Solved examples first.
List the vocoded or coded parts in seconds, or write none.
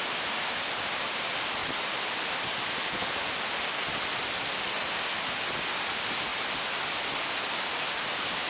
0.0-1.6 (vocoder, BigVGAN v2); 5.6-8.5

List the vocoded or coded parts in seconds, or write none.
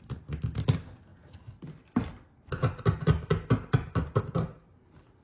none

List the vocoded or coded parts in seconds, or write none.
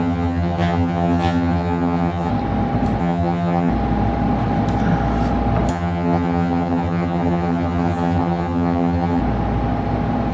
0.0-2.3 (vocoder, HiFi-GAN); 3.0-3.7; 5.7-9.2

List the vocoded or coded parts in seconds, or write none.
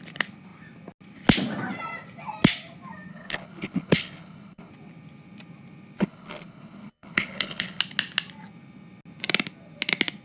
3.1-4.7 (codec, HILCodec); 6.0-7.8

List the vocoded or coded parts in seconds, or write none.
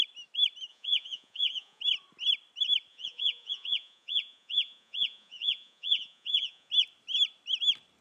0.7-1.8 (vocoder, Vocos); 2.9-6.7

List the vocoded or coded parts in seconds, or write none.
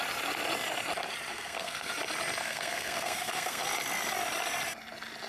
1.3-1.9 (codec, SNAC); 2.4-3.6